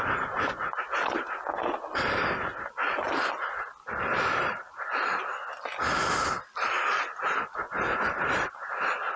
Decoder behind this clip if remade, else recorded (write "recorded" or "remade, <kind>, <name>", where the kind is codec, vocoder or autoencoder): recorded